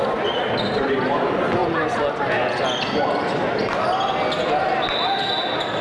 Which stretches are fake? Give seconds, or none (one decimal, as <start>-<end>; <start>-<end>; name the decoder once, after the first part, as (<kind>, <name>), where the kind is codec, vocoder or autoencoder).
none